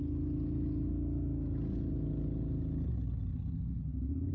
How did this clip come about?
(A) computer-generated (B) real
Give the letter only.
B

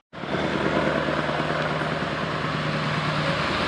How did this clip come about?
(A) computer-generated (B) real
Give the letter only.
B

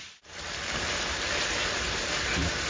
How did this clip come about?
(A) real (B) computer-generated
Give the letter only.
A